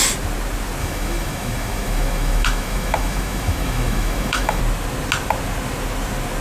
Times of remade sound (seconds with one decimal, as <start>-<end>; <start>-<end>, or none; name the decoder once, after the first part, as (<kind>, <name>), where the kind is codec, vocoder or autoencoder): 0.8-4.6 (autoencoder, DAC-VAE)

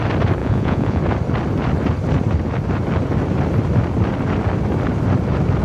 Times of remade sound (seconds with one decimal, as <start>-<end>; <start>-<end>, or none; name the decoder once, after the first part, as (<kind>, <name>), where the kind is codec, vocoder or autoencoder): 0.4-1.0 (vocoder, Vocos)

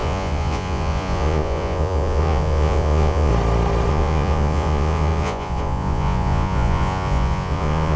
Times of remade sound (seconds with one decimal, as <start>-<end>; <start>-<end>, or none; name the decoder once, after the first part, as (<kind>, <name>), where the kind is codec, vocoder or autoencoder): 0.0-3.3 (vocoder, Vocos); 3.9-8.0